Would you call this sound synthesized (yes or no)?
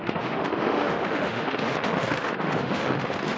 yes